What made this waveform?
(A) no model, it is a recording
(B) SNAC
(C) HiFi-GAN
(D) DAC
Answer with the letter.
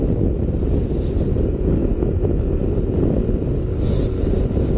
A